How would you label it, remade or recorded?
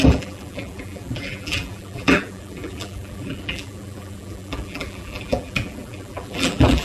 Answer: remade